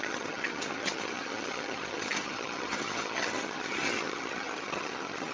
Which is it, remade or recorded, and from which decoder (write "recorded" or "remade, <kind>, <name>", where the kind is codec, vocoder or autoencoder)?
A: remade, vocoder, HiFi-GAN